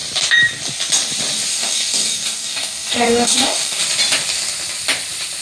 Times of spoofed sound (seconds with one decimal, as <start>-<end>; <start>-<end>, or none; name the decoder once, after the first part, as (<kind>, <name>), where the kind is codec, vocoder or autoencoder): 1.5-3.8 (codec, DAC)